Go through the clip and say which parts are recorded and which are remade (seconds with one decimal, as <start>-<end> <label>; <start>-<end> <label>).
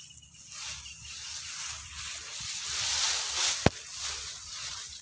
0.0-5.0 recorded